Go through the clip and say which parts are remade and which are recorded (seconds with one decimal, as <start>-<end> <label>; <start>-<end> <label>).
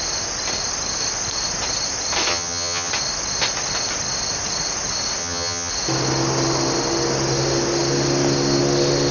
0.0-2.3 recorded; 2.3-2.9 remade; 2.9-5.2 recorded; 5.2-5.7 remade; 5.7-9.1 recorded